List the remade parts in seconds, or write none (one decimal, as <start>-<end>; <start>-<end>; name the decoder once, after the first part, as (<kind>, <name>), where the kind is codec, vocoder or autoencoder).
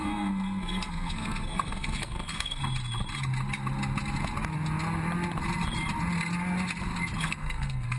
0.0-2.6 (codec, SNAC); 7.2-8.0